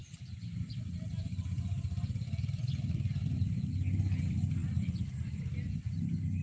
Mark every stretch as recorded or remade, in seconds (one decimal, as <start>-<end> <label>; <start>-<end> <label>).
0.0-3.8 remade; 3.8-6.4 recorded